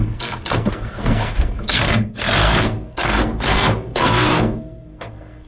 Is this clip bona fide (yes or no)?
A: no